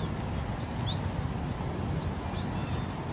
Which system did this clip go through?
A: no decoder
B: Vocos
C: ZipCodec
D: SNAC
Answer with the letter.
A